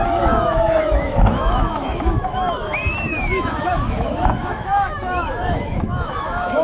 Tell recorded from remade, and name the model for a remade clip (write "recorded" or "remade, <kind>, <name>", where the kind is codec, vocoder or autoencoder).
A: remade, autoencoder, DAC-VAE